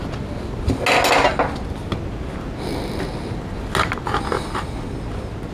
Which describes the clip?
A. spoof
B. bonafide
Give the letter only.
B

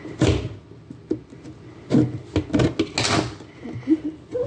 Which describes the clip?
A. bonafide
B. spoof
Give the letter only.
A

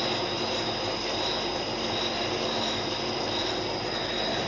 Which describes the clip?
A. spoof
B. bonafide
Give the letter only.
B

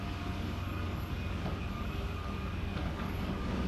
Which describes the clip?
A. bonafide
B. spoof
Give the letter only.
B